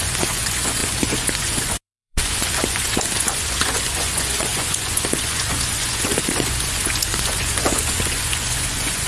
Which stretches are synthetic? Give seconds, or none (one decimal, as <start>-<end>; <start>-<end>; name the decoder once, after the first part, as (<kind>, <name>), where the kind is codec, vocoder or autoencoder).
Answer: 0.0-9.1 (vocoder, Vocos)